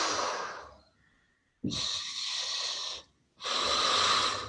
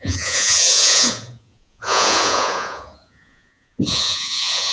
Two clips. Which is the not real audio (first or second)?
second